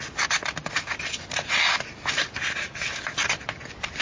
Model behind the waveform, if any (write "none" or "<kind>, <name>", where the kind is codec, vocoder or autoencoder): none